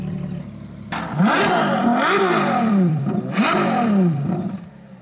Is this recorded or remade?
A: remade